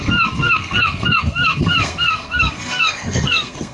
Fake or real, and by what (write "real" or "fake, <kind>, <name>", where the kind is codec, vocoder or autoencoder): fake, codec, SNAC